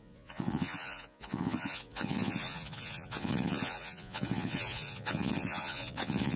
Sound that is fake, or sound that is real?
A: fake